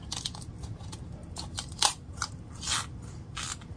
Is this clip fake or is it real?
real